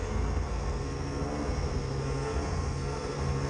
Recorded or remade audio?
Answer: remade